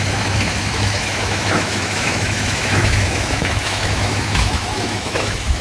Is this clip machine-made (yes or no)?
yes